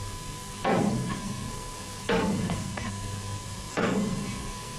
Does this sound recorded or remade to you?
remade